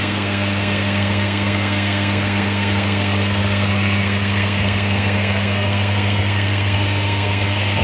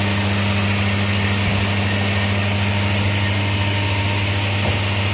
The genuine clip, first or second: second